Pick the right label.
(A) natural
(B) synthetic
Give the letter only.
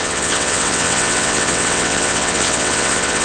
B